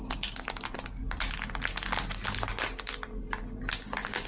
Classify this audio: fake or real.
real